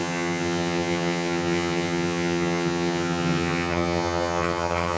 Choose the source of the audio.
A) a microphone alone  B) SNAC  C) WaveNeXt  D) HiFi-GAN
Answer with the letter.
D